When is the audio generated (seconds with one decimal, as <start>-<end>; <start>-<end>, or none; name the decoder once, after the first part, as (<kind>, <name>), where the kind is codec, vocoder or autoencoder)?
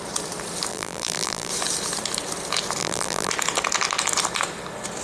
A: 0.7-1.5 (vocoder, BigVGAN v2); 2.8-3.3